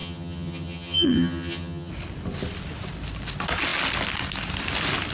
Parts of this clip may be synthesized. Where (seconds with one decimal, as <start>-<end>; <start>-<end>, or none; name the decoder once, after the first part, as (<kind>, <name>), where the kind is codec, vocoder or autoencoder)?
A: 0.0-1.9 (vocoder, HiFi-GAN)